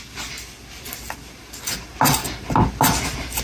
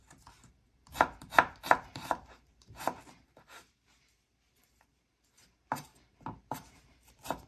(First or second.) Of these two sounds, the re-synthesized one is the second